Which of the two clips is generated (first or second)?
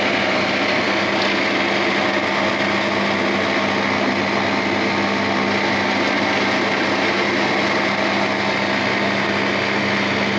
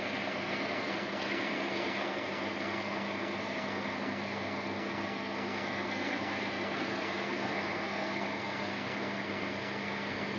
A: second